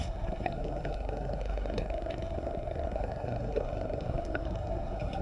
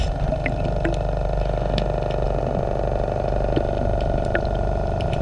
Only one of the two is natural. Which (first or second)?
second